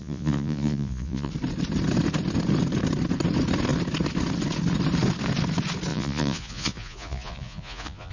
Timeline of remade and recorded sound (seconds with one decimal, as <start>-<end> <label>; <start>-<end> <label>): 0.0-1.3 remade; 1.3-5.9 recorded; 5.9-8.1 remade